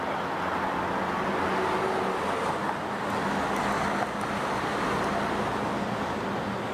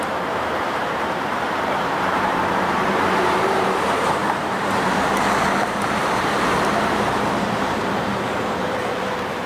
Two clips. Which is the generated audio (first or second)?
second